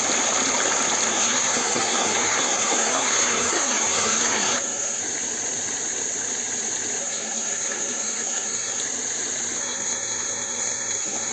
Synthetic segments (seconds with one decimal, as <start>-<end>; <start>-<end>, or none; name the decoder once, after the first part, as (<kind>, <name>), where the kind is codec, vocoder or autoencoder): 1.1-5.0 (codec, SNAC); 7.0-8.8; 9.6-11.3